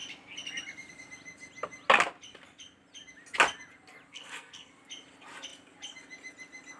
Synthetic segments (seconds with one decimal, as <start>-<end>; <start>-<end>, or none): 4.1-4.7